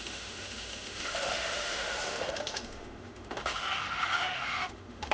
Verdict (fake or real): fake